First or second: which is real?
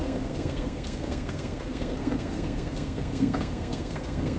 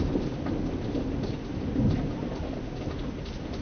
second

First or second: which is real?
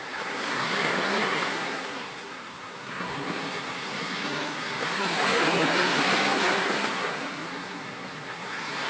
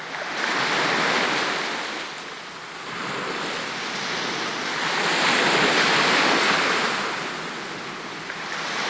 second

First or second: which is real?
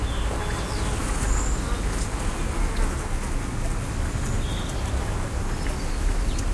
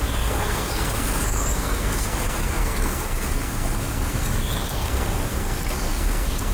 first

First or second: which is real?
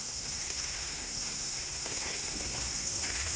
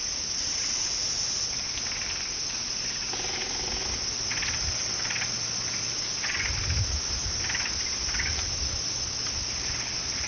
second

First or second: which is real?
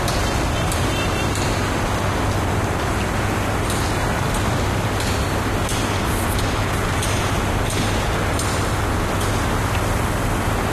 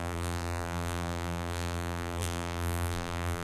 first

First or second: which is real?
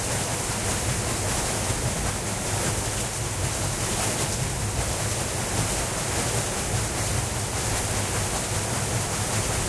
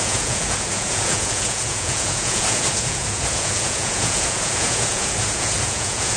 first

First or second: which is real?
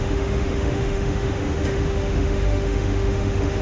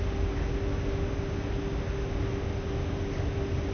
second